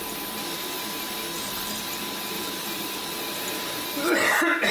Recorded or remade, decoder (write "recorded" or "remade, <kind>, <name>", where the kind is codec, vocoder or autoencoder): recorded